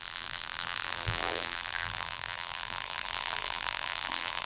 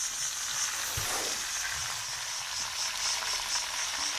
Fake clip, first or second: first